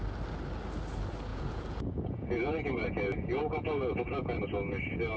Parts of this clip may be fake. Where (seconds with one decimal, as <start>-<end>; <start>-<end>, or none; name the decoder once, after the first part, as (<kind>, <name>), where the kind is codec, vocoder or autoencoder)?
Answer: 1.3-4.4 (vocoder, Vocos)